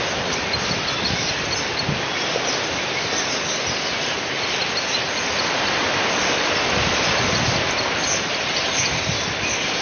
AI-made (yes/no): no